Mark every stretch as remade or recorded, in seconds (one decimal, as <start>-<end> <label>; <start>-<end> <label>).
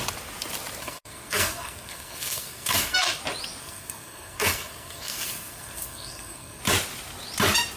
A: 0.0-0.8 recorded; 0.8-3.2 remade; 3.2-3.6 recorded; 3.6-6.6 remade; 6.6-7.8 recorded